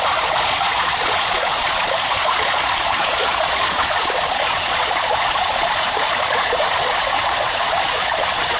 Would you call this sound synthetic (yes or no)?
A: yes